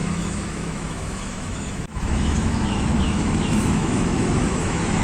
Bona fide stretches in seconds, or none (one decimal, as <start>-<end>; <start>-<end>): none